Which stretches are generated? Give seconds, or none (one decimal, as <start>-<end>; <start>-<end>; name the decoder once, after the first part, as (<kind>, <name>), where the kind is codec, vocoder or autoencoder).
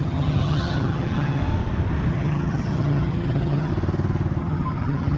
0.0-1.4 (vocoder, HiFi-GAN); 2.1-3.7; 4.4-5.2